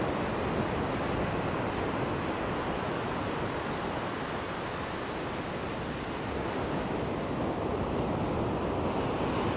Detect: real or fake real